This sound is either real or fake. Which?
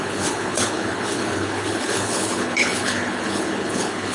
fake